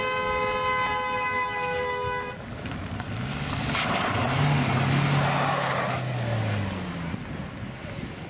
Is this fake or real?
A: real